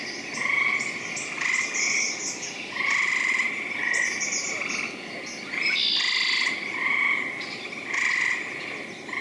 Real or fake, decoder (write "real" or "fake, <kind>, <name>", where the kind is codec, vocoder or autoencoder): real